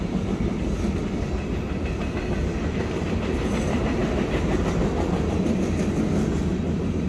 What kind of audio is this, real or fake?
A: real